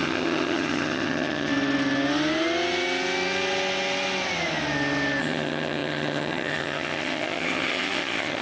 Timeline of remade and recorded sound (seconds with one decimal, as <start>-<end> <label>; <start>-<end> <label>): 0.0-1.5 remade; 1.5-5.2 recorded; 5.2-8.4 remade